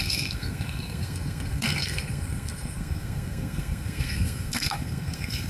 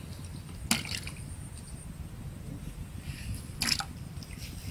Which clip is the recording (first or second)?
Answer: second